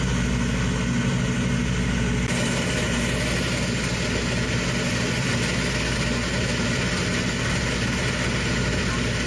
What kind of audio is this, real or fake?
real